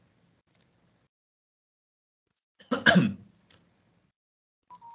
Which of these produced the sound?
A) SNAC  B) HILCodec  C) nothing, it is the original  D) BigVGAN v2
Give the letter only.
C